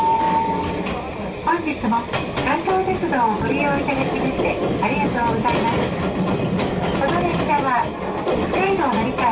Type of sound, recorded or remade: recorded